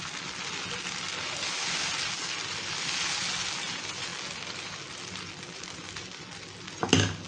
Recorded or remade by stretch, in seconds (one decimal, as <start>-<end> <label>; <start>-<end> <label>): 0.0-7.3 recorded